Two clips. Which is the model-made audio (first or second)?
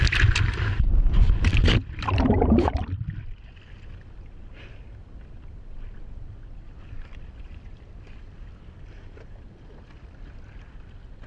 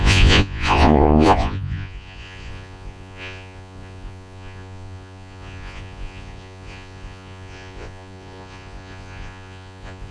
second